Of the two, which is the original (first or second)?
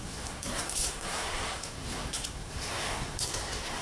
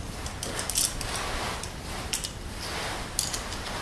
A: second